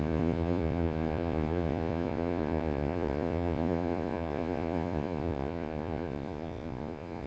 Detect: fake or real fake